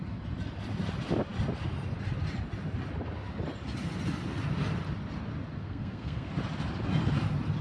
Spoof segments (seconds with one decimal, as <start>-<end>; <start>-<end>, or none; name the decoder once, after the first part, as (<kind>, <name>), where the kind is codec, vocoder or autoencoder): 5.6-6.3 (codec, SNAC)